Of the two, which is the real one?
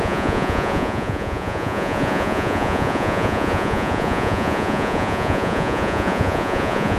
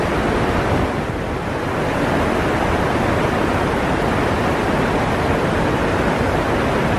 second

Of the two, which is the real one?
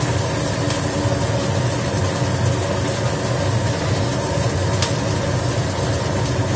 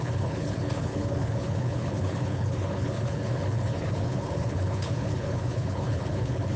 first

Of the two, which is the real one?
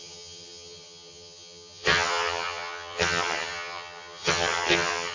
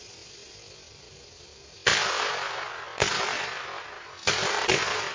second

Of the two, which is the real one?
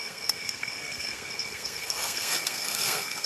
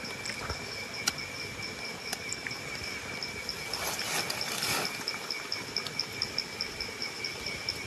second